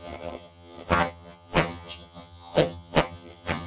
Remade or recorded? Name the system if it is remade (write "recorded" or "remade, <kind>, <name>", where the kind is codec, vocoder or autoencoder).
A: remade, vocoder, HiFi-GAN